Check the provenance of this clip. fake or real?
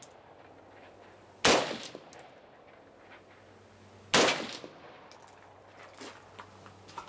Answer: real